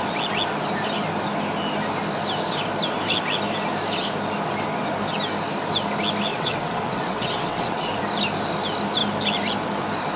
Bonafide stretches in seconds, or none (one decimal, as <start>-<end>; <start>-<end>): 0.0-6.3; 8.0-10.2